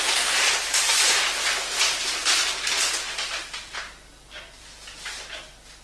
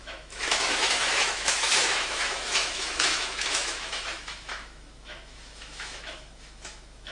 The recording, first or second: first